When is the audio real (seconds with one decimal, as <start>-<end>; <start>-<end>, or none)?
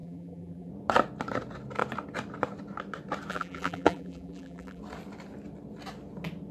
0.7-3.3; 4.8-6.5